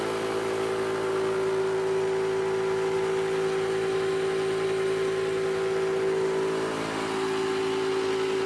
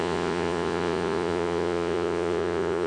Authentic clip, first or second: first